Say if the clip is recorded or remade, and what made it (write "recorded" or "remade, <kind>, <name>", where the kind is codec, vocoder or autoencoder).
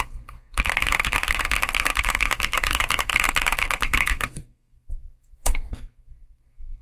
remade, codec, SNAC